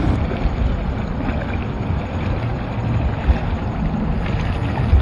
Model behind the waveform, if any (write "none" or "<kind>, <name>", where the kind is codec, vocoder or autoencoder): none